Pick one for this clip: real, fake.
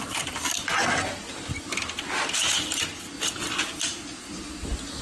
real